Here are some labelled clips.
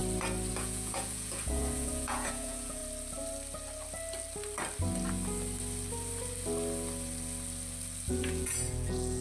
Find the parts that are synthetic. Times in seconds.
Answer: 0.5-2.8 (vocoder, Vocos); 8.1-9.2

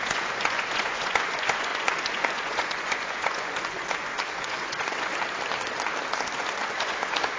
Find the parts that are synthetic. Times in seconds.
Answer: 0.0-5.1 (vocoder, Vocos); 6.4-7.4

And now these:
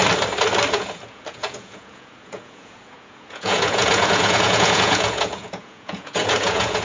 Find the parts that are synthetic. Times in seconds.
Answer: 0.7-6.8 (vocoder, Vocos)

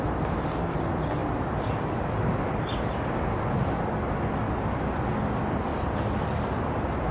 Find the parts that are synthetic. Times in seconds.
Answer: none

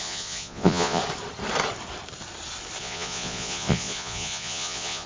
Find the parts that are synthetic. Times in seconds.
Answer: 0.0-1.0 (vocoder, Vocos); 2.8-5.1

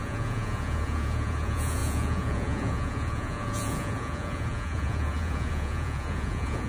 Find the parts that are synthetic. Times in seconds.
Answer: 0.0-6.7 (vocoder, Vocos)

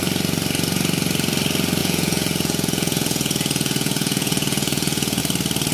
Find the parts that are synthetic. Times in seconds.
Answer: 1.8-5.2 (vocoder, Vocos)